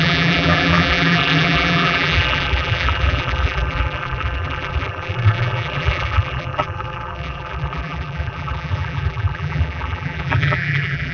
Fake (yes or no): yes